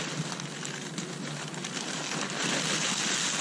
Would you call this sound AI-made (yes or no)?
no